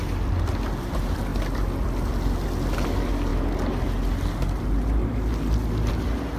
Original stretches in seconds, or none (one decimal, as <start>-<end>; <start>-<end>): 0.0-6.4